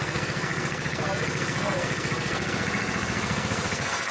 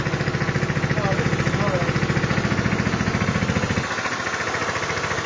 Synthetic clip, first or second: first